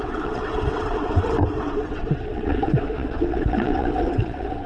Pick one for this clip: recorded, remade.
remade